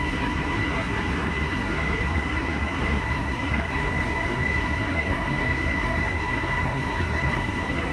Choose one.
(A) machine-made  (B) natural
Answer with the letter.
A